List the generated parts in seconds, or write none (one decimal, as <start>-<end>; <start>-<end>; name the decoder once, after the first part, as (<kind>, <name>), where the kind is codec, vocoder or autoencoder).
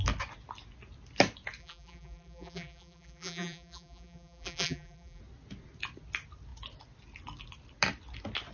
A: 1.6-5.2 (vocoder, BigVGAN v2)